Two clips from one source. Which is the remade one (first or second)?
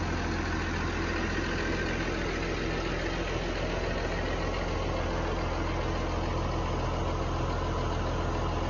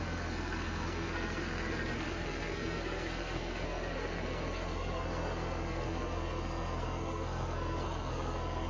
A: second